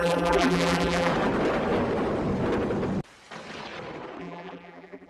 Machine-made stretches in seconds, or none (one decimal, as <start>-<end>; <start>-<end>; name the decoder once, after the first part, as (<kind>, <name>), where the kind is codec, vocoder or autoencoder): 0.0-1.1 (vocoder, BigVGAN v2); 4.2-5.1